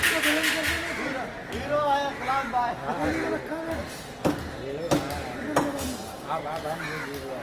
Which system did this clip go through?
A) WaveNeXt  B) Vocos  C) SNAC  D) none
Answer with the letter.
D